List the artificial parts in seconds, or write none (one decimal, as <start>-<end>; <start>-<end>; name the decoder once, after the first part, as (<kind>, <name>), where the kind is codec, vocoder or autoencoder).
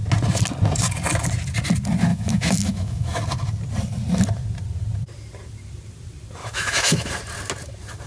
2.1-3.2 (autoencoder, DAC-VAE); 6.4-7.1